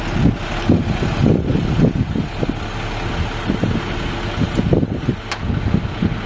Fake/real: real